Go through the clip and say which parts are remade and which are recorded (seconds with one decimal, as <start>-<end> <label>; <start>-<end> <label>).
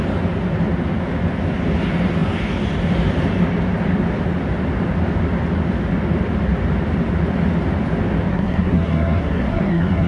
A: 0.0-8.3 recorded; 8.3-10.1 remade